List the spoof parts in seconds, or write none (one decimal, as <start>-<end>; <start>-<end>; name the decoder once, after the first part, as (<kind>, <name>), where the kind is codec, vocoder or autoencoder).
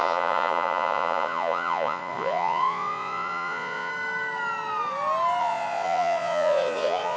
0.0-3.9 (vocoder, Vocos); 5.4-7.2